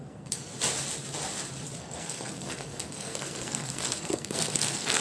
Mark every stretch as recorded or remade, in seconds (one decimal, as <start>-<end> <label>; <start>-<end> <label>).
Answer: 0.0-0.5 remade; 0.5-1.8 recorded; 1.8-5.0 remade